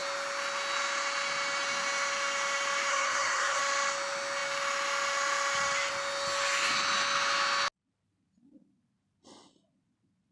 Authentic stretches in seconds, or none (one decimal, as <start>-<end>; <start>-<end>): 0.0-2.9; 3.6-10.3